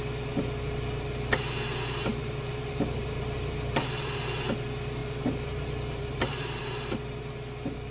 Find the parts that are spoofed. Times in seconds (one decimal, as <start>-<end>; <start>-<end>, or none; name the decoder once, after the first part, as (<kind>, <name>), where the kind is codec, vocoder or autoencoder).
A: 2.1-4.2 (vocoder, BigVGAN v2); 5.0-6.6